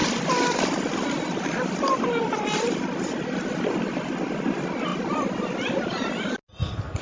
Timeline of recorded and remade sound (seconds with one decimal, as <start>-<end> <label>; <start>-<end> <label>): 0.0-7.0 recorded